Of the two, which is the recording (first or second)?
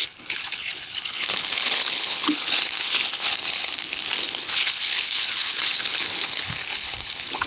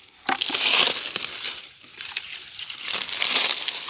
second